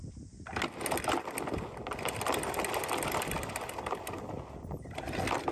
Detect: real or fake real